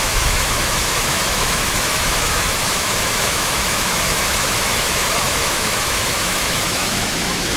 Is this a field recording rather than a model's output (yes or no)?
no